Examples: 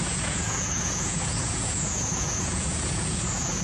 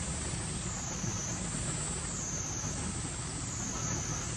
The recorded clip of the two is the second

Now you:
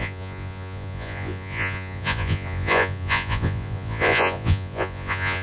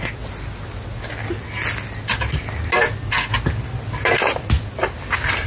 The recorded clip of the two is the second